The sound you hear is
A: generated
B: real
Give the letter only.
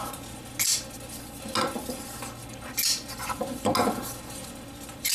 B